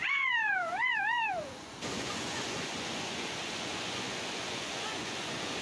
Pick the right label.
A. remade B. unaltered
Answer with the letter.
A